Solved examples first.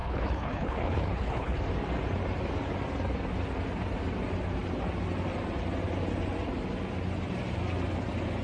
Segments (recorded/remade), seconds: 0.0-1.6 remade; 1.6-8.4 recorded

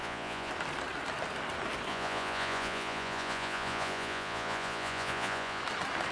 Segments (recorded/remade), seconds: 0.0-0.5 remade; 0.5-1.9 recorded; 1.9-5.6 remade; 5.6-6.1 recorded

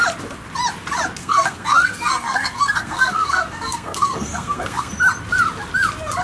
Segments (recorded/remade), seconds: 0.0-1.2 recorded; 1.2-4.9 remade; 4.9-6.2 recorded

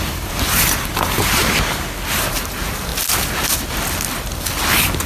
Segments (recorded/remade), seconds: 0.0-1.4 remade; 1.4-2.1 recorded; 2.1-2.9 remade; 2.9-5.1 recorded